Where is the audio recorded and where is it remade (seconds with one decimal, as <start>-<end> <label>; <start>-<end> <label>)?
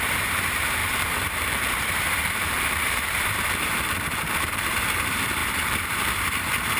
0.0-6.8 remade